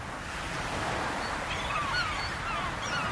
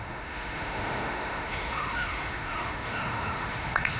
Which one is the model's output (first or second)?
second